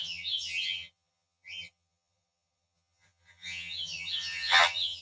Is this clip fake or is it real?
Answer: fake